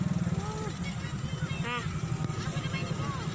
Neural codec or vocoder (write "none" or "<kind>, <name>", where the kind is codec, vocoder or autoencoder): none